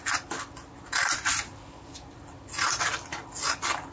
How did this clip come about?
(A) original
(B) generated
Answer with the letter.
A